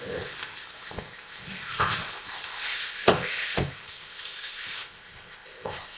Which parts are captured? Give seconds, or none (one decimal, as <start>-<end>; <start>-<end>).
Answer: none